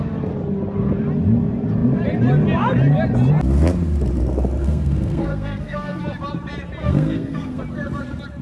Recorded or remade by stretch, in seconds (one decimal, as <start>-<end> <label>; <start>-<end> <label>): 0.0-4.6 recorded; 4.6-6.0 remade; 6.0-6.8 recorded; 6.8-7.6 remade; 7.6-8.4 recorded